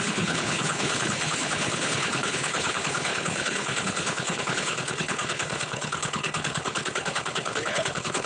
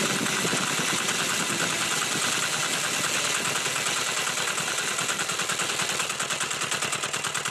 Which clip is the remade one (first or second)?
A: first